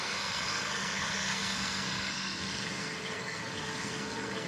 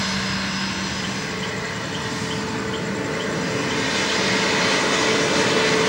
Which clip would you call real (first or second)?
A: second